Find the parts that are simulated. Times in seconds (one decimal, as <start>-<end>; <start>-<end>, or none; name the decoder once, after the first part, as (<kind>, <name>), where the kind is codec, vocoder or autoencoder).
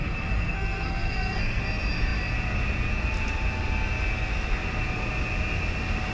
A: 0.0-1.6 (codec, SNAC)